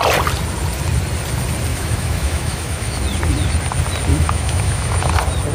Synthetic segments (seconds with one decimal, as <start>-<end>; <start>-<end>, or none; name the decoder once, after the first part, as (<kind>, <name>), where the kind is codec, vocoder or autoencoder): 1.7-3.0 (autoencoder, DAC-VAE); 4.1-5.1